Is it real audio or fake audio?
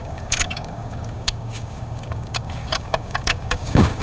fake